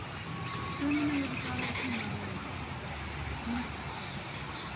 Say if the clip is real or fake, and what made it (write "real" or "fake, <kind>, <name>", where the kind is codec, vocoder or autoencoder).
real